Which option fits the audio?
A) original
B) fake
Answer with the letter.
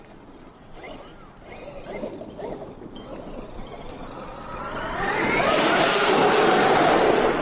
A